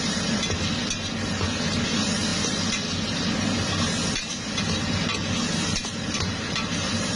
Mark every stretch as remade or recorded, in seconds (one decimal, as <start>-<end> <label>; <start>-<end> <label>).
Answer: 0.0-7.1 recorded